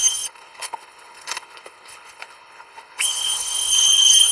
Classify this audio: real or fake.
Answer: fake